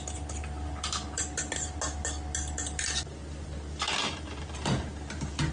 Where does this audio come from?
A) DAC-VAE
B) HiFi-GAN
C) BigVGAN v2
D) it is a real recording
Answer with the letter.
D